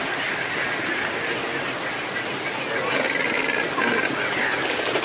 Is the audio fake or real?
real